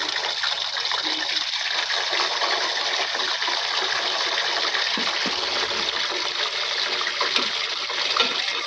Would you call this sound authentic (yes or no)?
yes